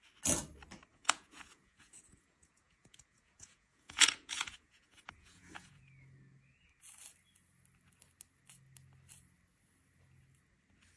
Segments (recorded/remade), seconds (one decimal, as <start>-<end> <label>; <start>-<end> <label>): 0.0-0.9 recorded; 0.9-5.8 remade; 5.8-11.0 recorded